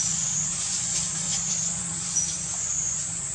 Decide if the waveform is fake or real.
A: fake